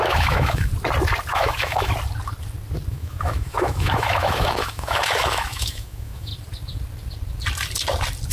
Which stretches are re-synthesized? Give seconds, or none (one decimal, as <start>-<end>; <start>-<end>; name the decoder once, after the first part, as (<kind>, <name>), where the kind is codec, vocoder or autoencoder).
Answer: 0.0-0.7 (autoencoder, DAC-VAE); 1.3-1.9; 2.9-6.3